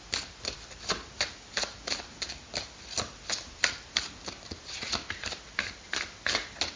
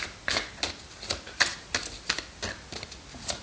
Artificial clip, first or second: first